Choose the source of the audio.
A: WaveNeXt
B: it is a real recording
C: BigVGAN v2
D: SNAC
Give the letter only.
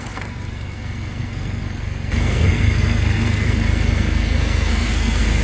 D